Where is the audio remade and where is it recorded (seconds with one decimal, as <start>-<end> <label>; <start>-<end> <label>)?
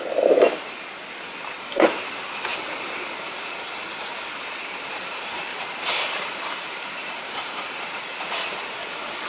0.0-5.5 recorded; 5.5-8.2 remade; 8.2-9.3 recorded